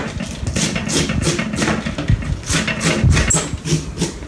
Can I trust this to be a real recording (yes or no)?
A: yes